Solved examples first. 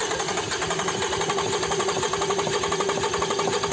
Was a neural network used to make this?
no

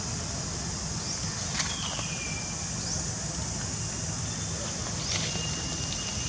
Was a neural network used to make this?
no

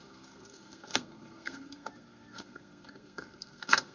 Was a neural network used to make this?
yes